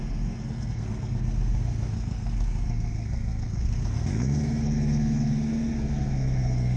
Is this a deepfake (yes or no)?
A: yes